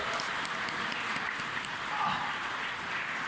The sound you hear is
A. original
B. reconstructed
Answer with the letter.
A